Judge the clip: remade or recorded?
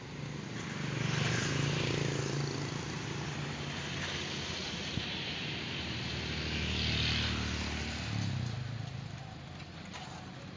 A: recorded